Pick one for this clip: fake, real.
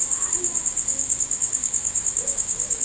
fake